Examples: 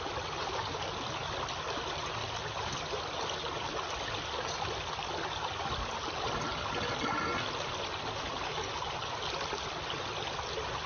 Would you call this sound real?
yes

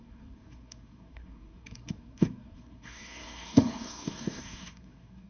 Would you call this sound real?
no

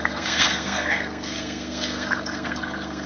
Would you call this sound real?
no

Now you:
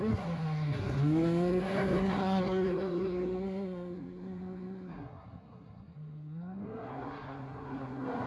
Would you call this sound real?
no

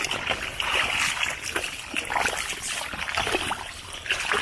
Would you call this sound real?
yes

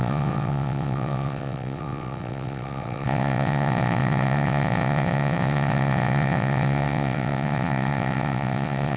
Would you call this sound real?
no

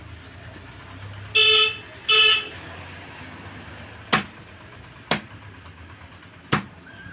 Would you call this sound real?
yes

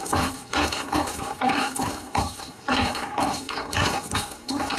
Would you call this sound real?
no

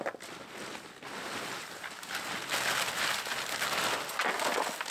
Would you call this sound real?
yes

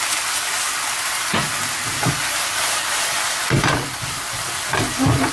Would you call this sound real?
yes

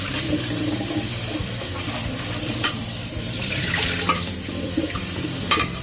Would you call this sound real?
no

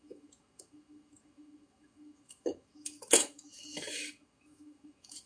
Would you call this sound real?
no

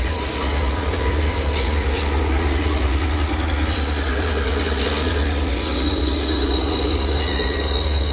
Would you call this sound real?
no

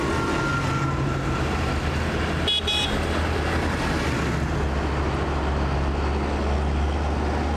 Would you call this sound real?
yes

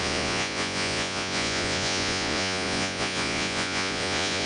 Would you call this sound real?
no